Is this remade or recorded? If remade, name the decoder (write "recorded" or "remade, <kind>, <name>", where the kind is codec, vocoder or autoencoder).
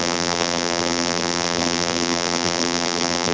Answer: remade, vocoder, BigVGAN v2